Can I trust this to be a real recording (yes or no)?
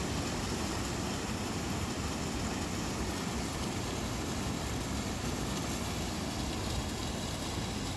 yes